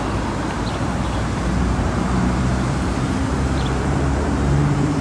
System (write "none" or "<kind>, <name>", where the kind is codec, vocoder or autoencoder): vocoder, BigVGAN v2